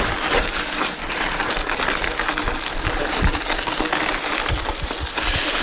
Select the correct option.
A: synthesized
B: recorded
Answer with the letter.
B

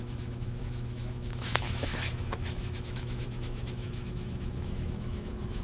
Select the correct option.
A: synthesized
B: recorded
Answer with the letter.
A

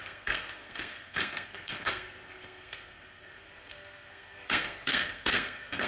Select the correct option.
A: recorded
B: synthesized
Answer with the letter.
B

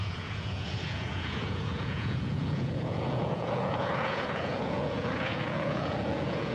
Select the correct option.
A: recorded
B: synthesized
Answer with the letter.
B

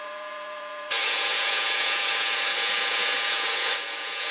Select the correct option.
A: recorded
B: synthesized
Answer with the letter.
B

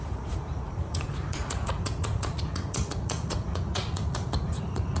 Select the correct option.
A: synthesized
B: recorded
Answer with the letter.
A